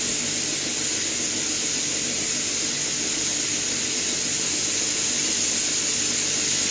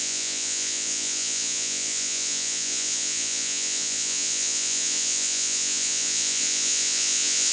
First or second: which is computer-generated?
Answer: second